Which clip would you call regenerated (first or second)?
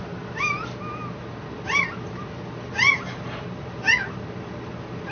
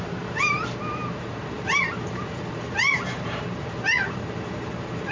second